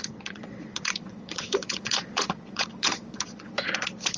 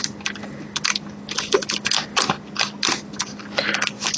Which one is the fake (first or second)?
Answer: first